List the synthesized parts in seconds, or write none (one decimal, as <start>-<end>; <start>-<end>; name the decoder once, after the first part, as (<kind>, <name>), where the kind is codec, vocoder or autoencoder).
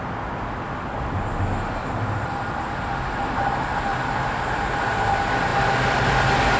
3.9-5.1 (vocoder, BigVGAN v2); 5.5-6.1